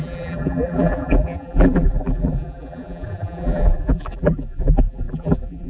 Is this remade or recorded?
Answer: remade